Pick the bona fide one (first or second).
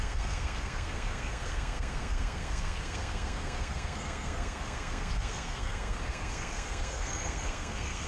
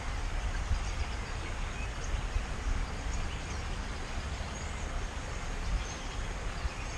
second